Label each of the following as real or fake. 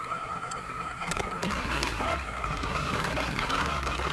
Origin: fake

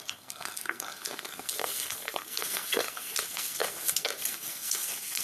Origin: fake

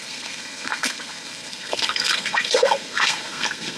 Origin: fake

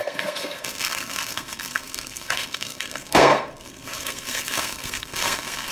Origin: fake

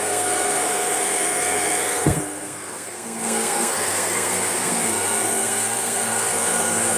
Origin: fake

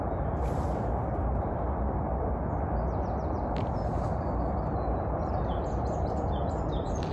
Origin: real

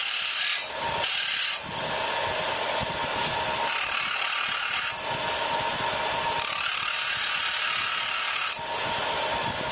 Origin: real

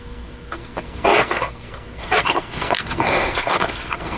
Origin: fake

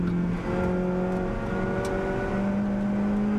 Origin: real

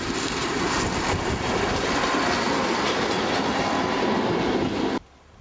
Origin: real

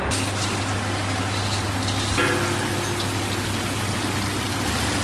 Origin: real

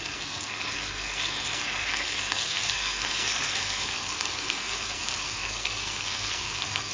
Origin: fake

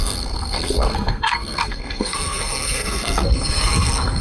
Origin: fake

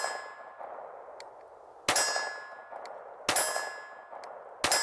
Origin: real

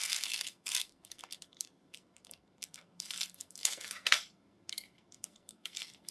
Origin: fake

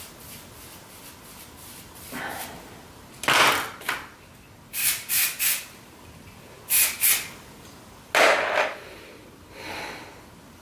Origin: real